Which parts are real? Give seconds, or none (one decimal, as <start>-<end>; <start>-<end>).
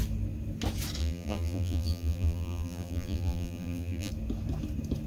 0.0-1.0; 4.1-5.1